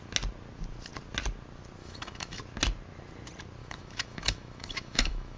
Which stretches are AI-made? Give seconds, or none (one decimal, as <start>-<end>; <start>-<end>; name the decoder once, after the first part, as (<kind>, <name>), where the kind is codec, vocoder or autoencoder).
1.8-2.4 (autoencoder, DAC-VAE); 3.6-5.4